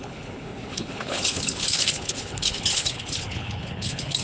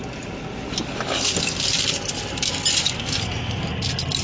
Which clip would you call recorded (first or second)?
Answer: second